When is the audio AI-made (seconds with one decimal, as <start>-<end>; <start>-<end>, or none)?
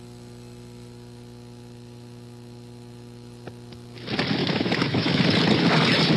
4.4-5.2